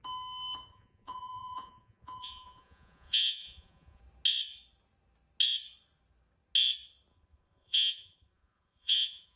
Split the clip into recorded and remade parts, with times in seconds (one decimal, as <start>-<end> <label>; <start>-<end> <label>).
0.0-0.7 recorded; 0.7-4.0 remade; 4.0-7.1 recorded; 7.1-9.4 remade